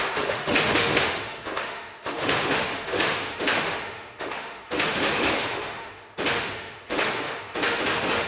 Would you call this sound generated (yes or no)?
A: yes